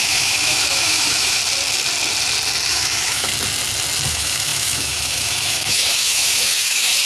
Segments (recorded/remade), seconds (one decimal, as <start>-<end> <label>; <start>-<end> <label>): 0.0-1.4 remade; 1.4-2.7 recorded; 2.7-3.3 remade; 3.3-4.1 recorded; 4.1-7.1 remade